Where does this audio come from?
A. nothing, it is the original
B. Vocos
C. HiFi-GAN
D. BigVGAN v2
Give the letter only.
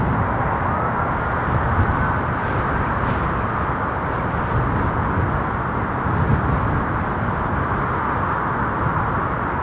A